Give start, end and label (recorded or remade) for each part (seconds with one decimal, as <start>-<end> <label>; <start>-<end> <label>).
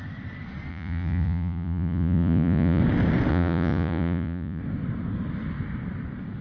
0.0-0.7 recorded; 0.7-2.8 remade; 2.8-3.3 recorded; 3.3-4.6 remade; 4.6-6.4 recorded